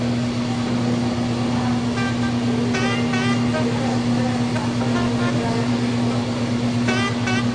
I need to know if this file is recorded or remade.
recorded